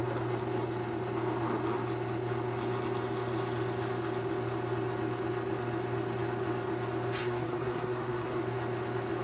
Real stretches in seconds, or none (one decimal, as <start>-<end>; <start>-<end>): 0.0-7.2; 8.4-9.2